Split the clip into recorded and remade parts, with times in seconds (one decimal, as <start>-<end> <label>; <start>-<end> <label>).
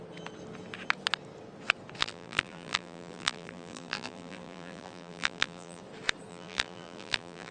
0.0-2.0 recorded; 2.0-5.8 remade; 5.8-6.3 recorded; 6.3-7.5 remade